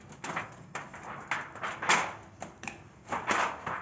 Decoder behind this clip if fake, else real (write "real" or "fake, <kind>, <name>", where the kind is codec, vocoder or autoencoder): real